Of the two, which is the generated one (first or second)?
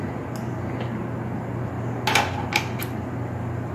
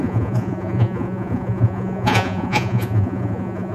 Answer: second